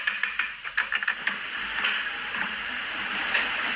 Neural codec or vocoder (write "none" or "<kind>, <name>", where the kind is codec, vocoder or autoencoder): none